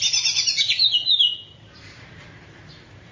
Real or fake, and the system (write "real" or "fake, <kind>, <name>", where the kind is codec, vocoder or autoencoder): fake, vocoder, BigVGAN v2